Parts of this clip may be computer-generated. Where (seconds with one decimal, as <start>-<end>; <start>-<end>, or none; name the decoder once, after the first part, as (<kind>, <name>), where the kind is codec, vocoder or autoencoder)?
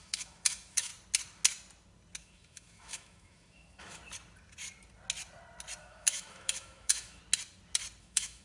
0.0-0.9 (autoencoder, DAC-VAE); 2.2-4.0; 5.8-7.2; 8.0-8.4